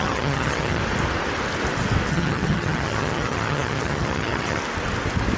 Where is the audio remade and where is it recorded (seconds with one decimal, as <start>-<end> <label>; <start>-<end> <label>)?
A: 0.0-0.8 remade; 0.8-2.1 recorded; 2.1-4.6 remade; 4.6-5.4 recorded